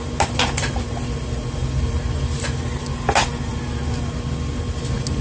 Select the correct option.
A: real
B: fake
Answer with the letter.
A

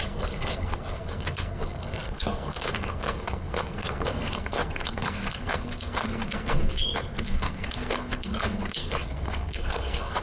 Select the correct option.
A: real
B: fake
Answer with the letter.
B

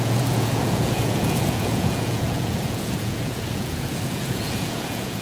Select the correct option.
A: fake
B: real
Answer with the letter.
A